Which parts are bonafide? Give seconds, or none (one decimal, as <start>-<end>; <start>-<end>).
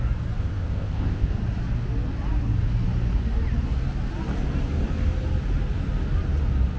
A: 0.0-0.4; 1.3-6.8